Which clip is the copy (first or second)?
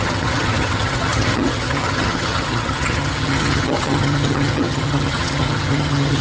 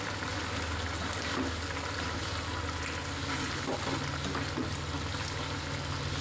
first